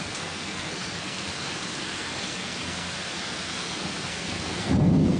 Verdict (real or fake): fake